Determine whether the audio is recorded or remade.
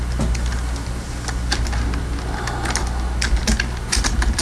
recorded